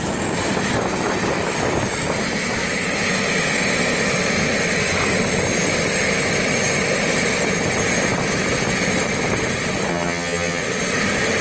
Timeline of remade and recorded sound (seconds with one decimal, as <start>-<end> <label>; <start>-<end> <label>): 0.0-9.9 recorded; 9.9-10.6 remade; 10.6-11.4 recorded